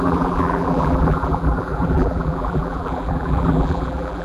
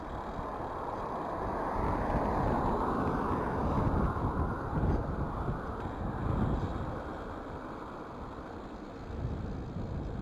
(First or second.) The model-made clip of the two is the first